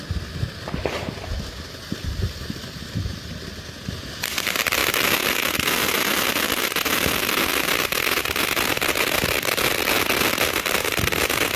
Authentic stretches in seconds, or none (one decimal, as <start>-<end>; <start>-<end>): 0.0-11.6